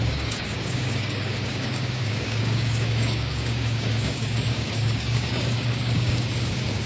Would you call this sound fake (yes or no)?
yes